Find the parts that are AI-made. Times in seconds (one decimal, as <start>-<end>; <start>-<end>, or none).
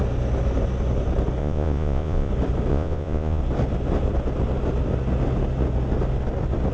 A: 1.4-2.3; 2.7-3.4